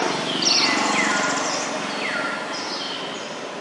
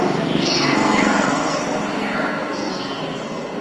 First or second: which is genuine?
first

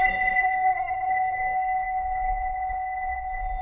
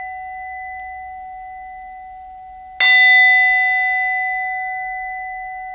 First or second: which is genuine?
second